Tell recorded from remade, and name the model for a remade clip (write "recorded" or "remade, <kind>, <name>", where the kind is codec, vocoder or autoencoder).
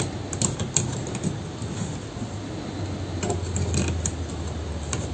recorded